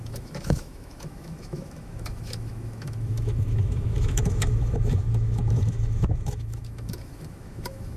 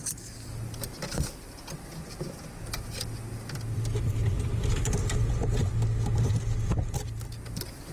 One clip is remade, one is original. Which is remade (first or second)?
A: first